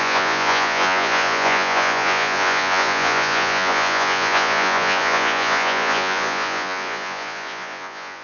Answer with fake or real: fake